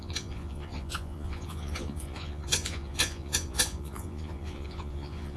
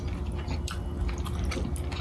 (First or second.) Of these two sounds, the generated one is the first